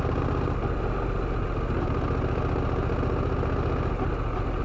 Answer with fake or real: real